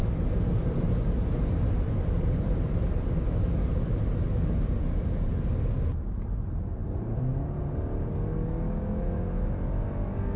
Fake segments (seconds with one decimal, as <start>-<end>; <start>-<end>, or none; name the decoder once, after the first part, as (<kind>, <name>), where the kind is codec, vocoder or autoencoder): 0.0-3.7 (vocoder, BigVGAN v2); 6.8-7.6